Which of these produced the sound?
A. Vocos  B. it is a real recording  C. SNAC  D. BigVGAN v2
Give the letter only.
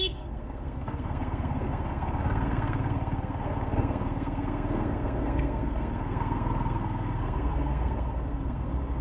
C